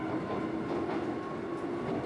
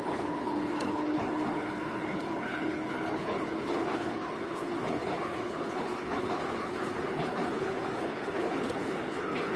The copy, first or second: second